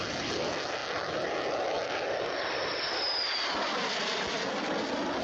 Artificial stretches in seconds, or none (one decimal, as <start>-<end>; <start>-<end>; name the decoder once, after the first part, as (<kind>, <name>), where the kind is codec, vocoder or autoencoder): none